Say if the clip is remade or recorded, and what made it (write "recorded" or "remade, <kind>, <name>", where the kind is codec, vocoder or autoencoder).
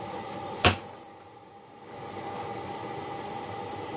recorded